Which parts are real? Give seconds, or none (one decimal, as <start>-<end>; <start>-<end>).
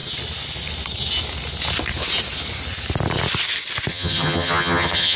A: 0.0-3.9